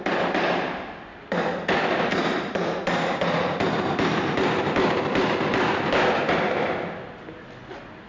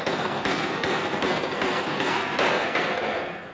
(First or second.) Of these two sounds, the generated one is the second